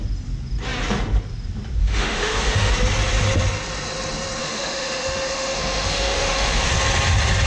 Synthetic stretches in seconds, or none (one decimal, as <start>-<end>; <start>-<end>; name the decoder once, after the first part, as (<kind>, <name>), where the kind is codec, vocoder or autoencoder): 1.8-2.7 (autoencoder, DAC-VAE); 4.4-6.7